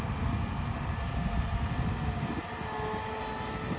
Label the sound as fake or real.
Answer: real